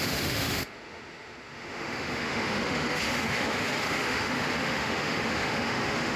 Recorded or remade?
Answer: remade